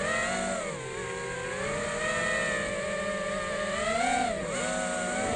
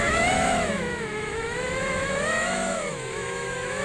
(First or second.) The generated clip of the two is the second